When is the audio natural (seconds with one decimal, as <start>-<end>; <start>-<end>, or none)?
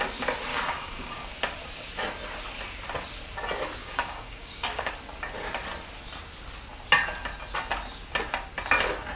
0.0-0.5; 1.3-3.8; 4.9-9.2